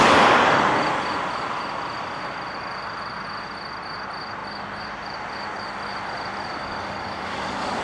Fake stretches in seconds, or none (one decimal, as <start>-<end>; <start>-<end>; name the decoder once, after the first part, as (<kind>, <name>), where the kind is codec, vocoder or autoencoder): 6.6-7.8 (codec, DAC)